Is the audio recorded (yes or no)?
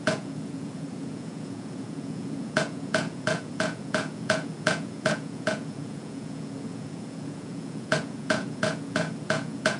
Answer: no